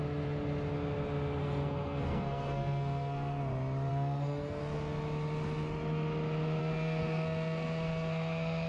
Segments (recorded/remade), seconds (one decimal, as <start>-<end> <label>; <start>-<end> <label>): 0.0-1.4 recorded; 1.4-3.4 remade; 3.4-3.9 recorded; 3.9-4.6 remade; 4.6-6.6 recorded; 6.6-8.7 remade